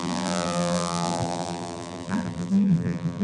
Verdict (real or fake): fake